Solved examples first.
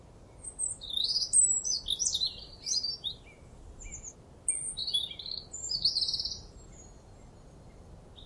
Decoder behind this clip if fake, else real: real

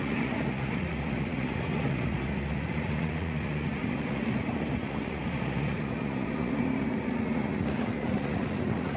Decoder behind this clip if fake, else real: fake, vocoder, Vocos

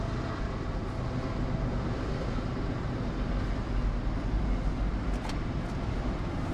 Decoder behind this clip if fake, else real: real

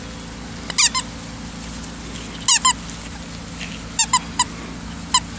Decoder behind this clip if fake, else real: real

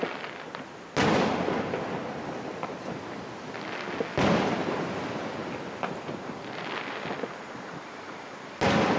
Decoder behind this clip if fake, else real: real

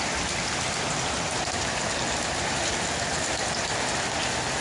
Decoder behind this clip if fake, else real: real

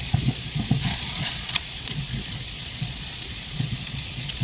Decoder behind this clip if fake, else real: fake, vocoder, Vocos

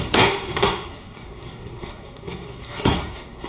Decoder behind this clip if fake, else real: fake, codec, SNAC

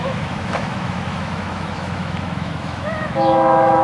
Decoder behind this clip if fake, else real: fake, autoencoder, DAC-VAE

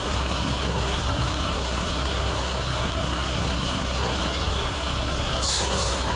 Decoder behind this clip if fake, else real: fake, codec, SNAC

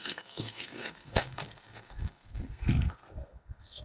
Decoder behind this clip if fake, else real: fake, codec, SNAC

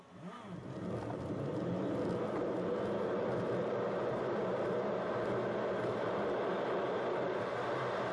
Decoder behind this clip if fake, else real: real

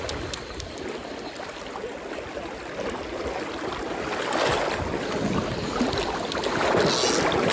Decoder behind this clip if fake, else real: real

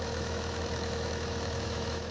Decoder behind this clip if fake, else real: fake, autoencoder, DAC-VAE